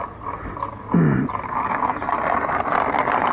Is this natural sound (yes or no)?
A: yes